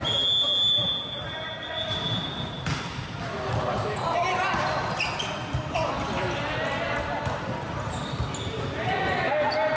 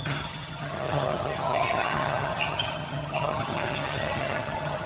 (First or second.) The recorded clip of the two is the first